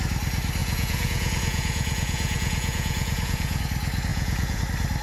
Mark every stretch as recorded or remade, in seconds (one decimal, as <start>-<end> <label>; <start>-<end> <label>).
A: 0.0-0.6 recorded; 0.6-3.6 remade; 3.6-4.1 recorded; 4.1-4.6 remade; 4.6-5.0 recorded